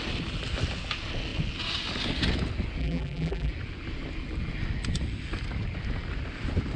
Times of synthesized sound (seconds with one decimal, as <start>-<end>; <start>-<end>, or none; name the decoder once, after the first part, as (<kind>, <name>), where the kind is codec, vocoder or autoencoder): 2.8-3.5 (vocoder, BigVGAN v2)